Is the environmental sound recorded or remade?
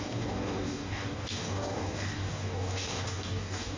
remade